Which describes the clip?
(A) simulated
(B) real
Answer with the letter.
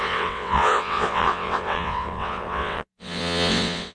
A